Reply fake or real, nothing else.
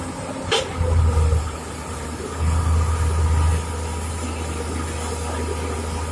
real